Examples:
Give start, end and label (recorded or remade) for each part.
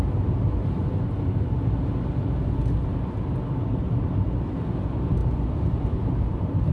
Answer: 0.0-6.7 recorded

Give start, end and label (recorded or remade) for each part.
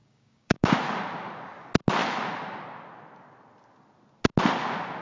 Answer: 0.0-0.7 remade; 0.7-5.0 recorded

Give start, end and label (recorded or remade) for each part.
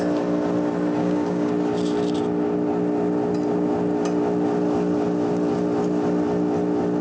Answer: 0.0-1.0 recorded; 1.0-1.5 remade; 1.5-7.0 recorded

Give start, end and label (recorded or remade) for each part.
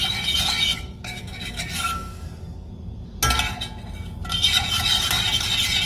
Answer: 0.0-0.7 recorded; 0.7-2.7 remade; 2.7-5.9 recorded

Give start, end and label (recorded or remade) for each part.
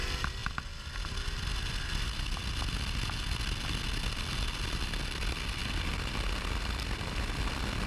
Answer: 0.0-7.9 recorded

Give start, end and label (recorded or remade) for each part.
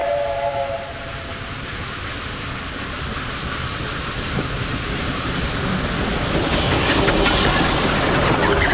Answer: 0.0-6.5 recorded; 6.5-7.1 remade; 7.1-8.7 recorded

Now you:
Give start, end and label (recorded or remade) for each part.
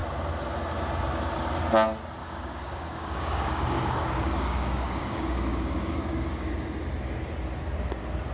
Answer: 0.0-2.2 recorded; 2.2-6.5 remade; 6.5-8.3 recorded